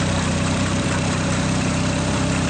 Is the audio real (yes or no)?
no